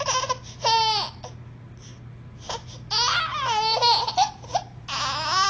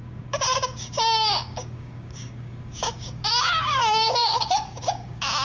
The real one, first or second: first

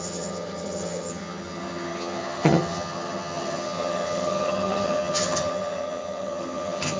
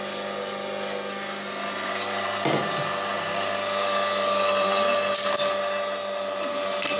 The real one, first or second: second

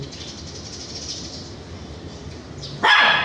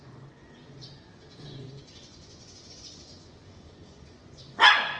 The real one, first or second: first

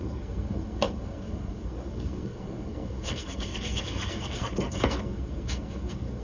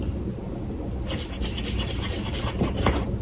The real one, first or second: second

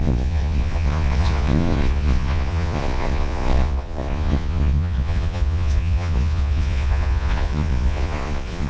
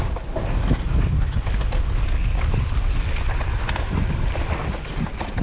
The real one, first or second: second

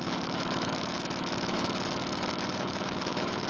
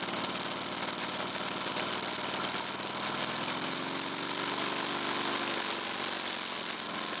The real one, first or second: second